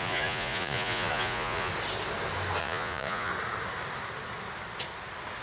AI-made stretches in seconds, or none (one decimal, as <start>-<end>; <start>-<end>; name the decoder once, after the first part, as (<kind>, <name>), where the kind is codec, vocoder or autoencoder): 0.0-1.7 (vocoder, Vocos); 2.6-3.3